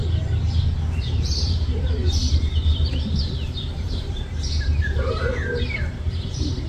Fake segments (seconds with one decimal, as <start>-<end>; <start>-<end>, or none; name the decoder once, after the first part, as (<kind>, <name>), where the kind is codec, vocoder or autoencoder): 1.0-6.7 (vocoder, BigVGAN v2)